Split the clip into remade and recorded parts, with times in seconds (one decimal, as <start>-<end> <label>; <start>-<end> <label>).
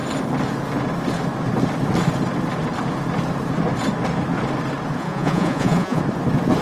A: 0.0-5.0 recorded; 5.0-6.0 remade; 6.0-6.6 recorded